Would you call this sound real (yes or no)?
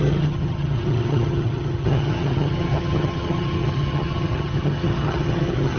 no